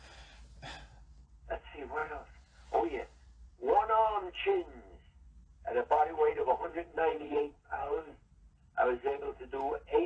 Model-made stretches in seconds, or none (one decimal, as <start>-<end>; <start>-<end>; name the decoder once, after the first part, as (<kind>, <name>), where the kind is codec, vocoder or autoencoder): 6.3-8.3 (vocoder, WaveNeXt)